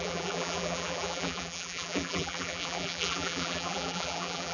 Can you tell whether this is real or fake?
fake